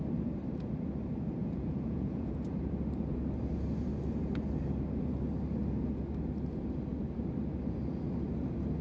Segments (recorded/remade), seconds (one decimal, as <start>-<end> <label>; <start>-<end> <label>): 0.0-1.4 recorded; 1.4-2.3 remade; 2.3-8.8 recorded